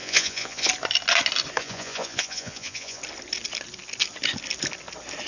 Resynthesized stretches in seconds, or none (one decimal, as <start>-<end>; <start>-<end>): 0.0-0.7; 1.6-3.0